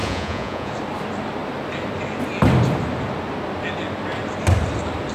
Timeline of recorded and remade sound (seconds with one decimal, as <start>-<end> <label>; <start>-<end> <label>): 0.0-0.7 remade; 0.7-5.1 recorded